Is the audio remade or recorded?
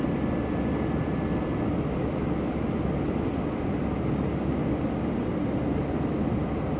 recorded